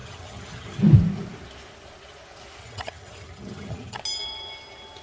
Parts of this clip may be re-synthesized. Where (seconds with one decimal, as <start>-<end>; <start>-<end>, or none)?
0.0-0.8; 2.6-4.0